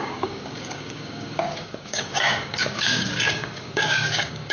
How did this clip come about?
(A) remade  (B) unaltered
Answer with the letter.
A